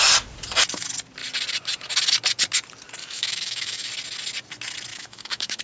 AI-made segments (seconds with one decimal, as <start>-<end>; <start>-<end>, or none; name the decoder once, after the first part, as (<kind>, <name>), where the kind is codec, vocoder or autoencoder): 3.0-3.9 (autoencoder, DAC-VAE); 4.9-5.6